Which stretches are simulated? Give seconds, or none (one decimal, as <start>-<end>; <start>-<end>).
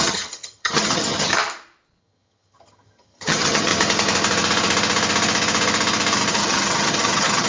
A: 0.0-1.3; 2.0-3.7; 6.3-7.5